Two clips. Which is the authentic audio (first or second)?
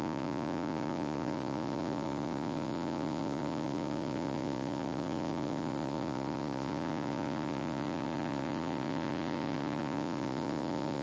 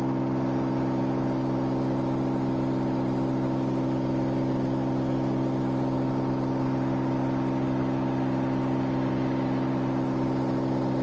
second